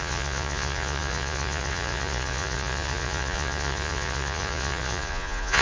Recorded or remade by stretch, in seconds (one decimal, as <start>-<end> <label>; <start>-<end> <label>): 0.0-5.6 remade